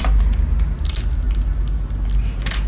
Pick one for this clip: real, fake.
real